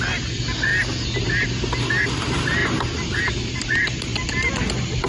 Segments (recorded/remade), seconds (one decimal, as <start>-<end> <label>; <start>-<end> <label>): 0.0-5.1 recorded